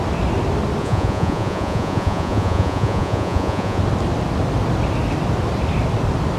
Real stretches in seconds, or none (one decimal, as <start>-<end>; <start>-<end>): 0.0-0.8; 3.8-6.4